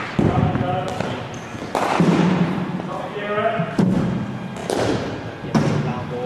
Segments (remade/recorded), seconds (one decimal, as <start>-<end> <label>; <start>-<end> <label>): 0.0-6.3 recorded